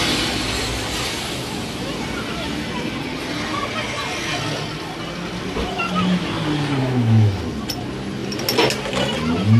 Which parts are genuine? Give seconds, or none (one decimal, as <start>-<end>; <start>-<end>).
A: 0.0-6.8; 7.4-9.6